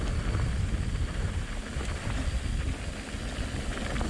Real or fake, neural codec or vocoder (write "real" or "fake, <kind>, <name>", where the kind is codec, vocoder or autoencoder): real